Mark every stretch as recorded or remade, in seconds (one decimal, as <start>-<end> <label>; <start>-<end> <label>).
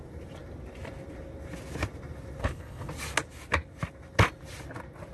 0.0-2.4 recorded; 2.4-2.9 remade; 2.9-5.1 recorded